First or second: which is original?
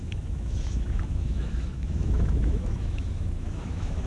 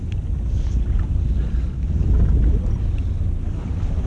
second